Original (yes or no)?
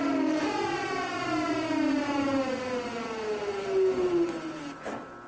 yes